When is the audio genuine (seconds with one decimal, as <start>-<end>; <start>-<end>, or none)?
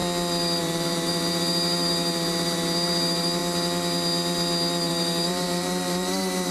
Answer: 0.0-0.6; 3.4-4.9